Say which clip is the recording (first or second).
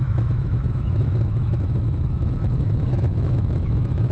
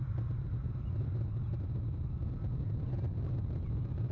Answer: second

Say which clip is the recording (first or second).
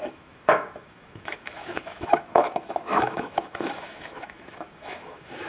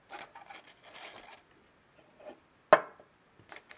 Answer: second